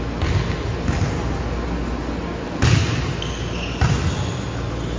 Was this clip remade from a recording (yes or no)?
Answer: no